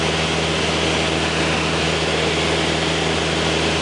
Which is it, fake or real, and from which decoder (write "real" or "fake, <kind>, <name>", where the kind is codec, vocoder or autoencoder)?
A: real